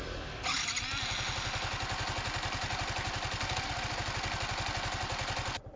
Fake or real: real